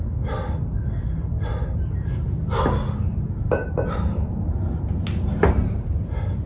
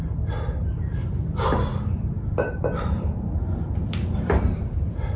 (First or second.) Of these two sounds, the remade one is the second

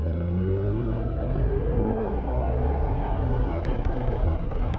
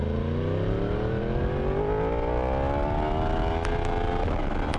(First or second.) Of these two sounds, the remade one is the first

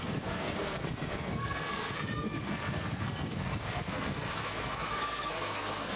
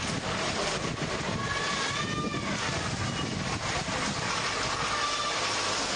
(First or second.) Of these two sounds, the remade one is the first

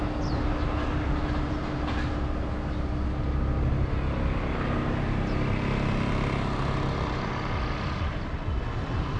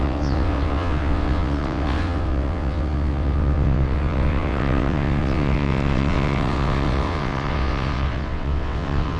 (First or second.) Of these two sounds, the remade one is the second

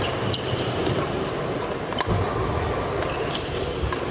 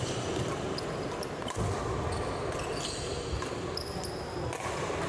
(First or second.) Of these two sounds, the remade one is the first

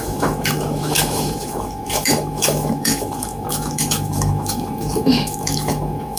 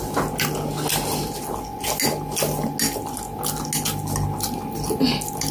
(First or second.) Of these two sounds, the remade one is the first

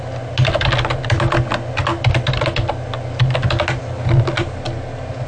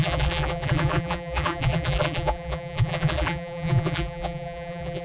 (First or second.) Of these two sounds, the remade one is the second